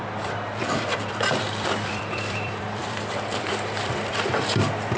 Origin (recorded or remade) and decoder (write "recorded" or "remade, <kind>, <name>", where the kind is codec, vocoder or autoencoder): remade, vocoder, BigVGAN v2